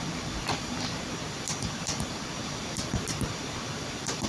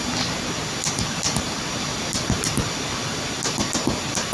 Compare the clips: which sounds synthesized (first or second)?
first